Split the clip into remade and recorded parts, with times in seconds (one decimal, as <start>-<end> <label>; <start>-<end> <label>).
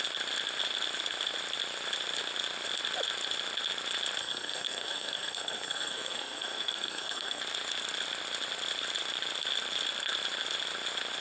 0.0-4.2 recorded; 4.2-7.4 remade; 7.4-11.2 recorded